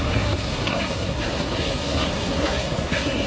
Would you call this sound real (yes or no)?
no